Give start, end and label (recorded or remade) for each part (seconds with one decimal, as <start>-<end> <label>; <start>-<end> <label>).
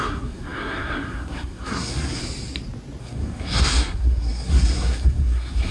0.0-2.2 remade; 2.2-3.0 recorded; 3.0-5.7 remade